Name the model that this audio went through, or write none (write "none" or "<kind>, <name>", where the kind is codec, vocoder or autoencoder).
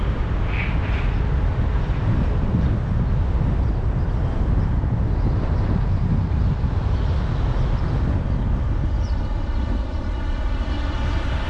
none